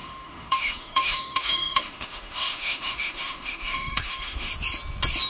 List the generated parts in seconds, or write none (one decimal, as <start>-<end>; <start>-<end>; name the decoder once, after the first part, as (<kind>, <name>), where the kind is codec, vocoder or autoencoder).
0.0-4.5 (autoencoder, DAC-VAE)